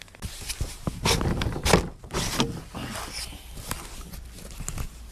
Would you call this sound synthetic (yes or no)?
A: no